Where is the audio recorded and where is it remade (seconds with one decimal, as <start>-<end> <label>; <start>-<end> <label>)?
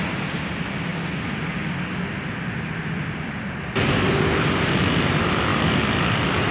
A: 0.0-6.5 recorded